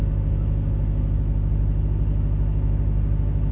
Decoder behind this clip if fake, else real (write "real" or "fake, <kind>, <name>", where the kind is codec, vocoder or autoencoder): real